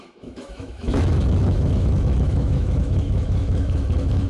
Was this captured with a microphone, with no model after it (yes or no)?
no